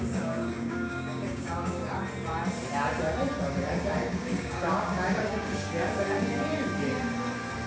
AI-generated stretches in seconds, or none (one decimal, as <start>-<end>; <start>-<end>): 0.0-1.8; 3.5-6.5